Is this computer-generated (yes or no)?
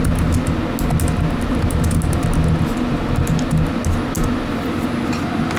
no